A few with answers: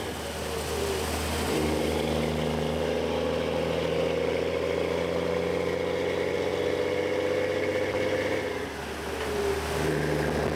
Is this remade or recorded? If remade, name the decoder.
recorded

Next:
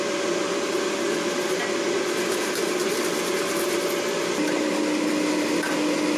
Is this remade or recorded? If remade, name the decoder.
recorded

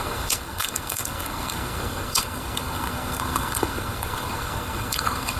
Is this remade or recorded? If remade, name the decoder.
remade, codec, SNAC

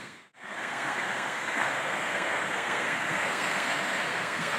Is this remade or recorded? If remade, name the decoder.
remade, codec, SNAC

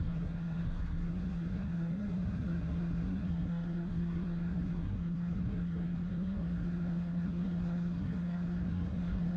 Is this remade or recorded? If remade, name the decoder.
remade, codec, SNAC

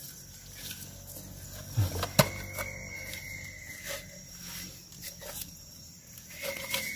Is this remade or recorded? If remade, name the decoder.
recorded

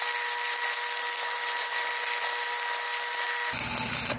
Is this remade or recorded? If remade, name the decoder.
recorded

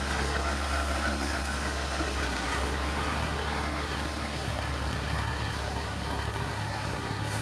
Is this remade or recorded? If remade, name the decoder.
remade, codec, SNAC